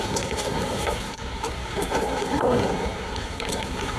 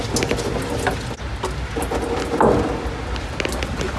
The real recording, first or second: second